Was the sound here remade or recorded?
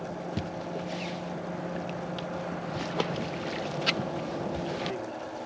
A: recorded